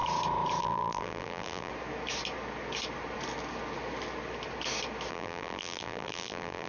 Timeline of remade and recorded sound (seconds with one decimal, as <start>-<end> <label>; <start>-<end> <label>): 0.0-0.6 recorded; 0.6-1.7 remade; 1.7-5.1 recorded; 5.1-6.7 remade